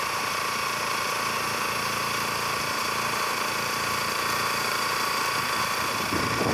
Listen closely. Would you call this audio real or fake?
fake